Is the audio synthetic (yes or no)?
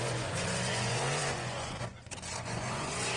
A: yes